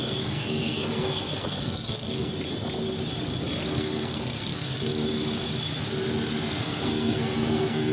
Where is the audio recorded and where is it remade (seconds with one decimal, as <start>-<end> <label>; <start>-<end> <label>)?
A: 0.0-2.3 remade; 2.3-3.7 recorded; 3.7-4.9 remade; 4.9-6.6 recorded; 6.6-7.9 remade